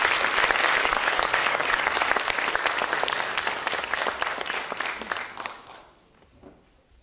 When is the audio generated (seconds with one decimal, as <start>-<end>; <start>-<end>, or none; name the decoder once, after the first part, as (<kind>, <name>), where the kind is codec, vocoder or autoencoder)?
0.8-2.1 (codec, DAC)